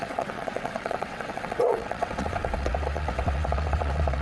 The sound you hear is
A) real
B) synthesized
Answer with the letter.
B